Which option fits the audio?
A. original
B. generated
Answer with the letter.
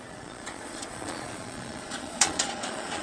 B